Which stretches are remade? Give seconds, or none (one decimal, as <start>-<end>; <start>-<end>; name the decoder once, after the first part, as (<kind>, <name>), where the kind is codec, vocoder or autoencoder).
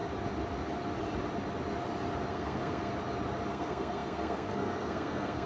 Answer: 2.3-2.9 (codec, SNAC); 3.5-5.5